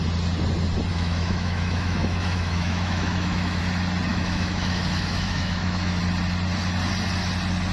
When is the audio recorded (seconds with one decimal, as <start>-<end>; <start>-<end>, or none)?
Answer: 0.0-0.9; 3.6-4.1; 6.0-7.7